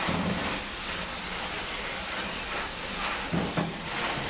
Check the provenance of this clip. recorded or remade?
recorded